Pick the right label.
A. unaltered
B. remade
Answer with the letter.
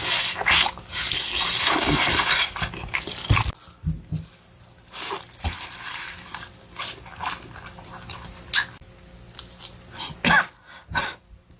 A